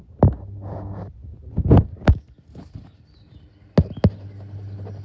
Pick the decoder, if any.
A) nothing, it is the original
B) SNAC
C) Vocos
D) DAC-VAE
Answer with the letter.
A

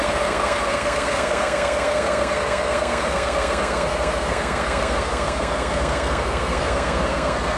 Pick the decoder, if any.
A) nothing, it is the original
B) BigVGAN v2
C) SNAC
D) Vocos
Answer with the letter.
C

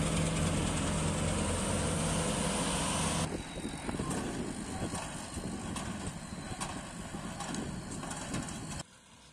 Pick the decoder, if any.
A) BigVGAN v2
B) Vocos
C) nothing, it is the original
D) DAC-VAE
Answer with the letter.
C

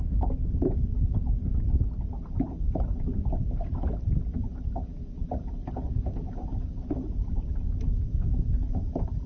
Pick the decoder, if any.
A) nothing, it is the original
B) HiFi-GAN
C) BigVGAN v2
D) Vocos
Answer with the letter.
A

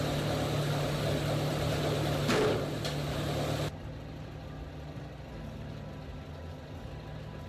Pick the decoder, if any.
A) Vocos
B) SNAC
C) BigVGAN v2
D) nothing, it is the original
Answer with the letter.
D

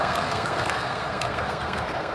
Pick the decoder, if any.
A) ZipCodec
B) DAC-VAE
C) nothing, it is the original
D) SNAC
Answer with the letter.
D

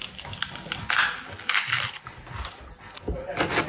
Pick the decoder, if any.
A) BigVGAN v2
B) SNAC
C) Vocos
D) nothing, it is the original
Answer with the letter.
D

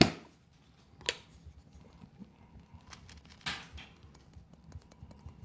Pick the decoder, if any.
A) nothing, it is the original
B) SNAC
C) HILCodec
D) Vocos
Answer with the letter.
A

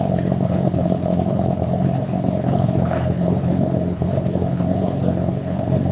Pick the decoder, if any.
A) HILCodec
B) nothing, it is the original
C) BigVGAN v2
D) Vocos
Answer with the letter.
A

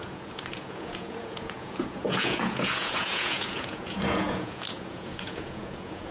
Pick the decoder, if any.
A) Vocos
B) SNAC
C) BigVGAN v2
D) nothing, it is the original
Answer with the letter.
A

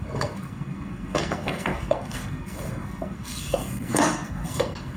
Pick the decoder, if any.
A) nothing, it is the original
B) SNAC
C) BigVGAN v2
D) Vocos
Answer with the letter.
B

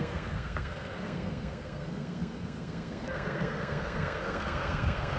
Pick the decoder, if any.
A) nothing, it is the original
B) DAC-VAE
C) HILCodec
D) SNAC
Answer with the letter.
D